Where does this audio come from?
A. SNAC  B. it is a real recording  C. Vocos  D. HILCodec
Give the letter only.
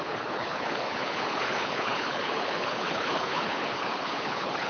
D